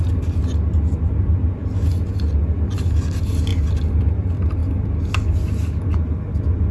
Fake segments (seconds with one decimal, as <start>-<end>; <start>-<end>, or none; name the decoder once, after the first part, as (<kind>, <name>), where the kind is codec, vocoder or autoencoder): none